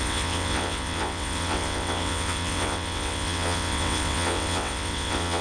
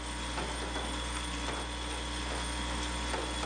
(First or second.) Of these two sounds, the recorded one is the second